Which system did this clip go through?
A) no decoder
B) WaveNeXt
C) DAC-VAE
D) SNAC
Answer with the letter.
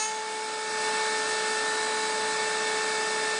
A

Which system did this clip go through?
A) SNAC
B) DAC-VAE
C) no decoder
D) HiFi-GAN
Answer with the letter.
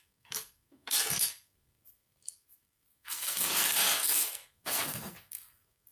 A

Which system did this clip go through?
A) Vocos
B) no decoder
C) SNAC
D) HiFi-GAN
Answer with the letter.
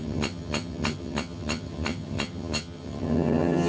D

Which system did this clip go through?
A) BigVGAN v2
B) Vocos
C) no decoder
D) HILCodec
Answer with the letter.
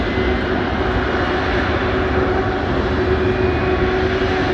C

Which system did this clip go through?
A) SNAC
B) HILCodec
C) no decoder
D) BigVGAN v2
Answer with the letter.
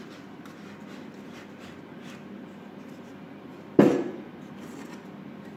C